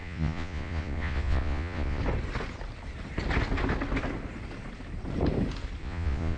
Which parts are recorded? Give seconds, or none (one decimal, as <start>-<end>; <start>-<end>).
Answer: 2.0-5.8